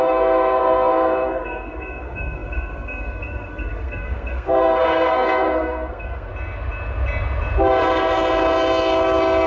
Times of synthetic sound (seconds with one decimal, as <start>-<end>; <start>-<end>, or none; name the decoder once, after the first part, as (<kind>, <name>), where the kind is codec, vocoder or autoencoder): 0.0-6.3 (codec, SNAC)